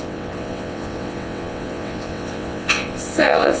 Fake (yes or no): yes